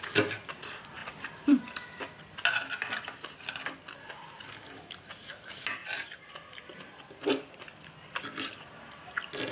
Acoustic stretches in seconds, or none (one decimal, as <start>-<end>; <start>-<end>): 0.0-1.0; 2.2-9.5